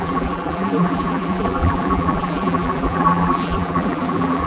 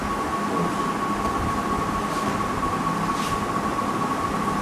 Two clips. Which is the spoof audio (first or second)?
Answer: first